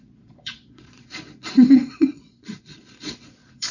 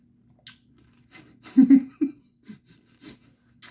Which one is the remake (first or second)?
first